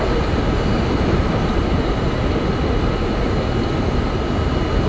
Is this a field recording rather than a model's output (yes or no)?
yes